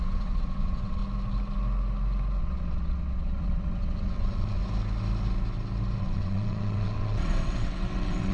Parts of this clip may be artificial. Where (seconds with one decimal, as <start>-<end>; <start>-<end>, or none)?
0.0-1.0; 2.4-4.6; 6.0-8.3